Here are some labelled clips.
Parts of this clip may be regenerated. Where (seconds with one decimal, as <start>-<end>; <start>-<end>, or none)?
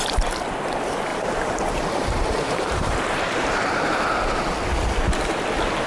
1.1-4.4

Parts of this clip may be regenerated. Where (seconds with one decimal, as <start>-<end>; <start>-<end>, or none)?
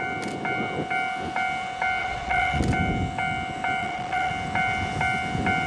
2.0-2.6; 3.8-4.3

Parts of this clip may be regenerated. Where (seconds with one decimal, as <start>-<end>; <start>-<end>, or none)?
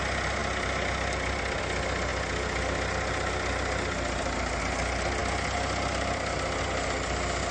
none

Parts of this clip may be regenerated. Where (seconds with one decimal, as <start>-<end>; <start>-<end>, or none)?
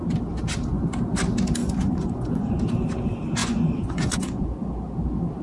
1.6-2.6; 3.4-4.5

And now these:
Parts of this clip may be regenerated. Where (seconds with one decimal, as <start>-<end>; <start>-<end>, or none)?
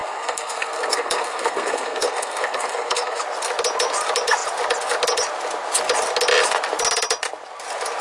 0.0-3.2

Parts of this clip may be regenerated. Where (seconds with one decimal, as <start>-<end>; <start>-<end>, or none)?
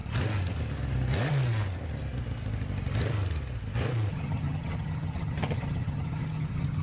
4.1-6.8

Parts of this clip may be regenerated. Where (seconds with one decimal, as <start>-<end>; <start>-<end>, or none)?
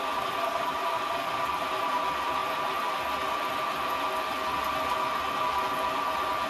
none